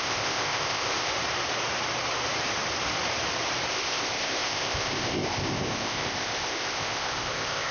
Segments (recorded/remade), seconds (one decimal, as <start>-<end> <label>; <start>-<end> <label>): 0.0-1.1 remade; 1.1-3.7 recorded; 3.7-7.7 remade